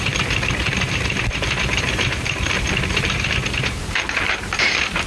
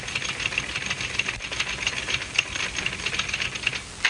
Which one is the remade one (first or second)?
first